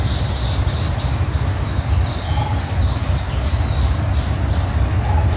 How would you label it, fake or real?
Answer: real